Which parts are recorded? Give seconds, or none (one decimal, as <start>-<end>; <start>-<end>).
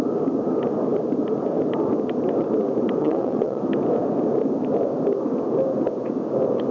0.0-3.0; 3.6-6.7